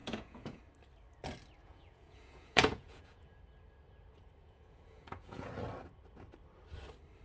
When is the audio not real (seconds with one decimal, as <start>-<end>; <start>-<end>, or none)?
0.0-0.6; 1.6-3.4; 4.4-5.5

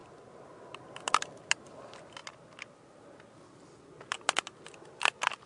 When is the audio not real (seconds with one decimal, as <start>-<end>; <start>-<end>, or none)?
none

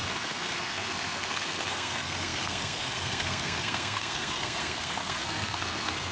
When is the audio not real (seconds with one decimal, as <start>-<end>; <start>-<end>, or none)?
0.0-6.1

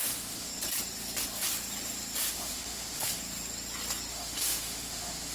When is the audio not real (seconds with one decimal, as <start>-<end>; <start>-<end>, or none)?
0.0-0.5; 2.3-3.2; 4.1-5.3